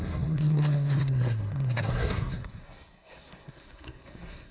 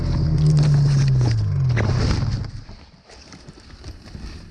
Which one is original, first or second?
second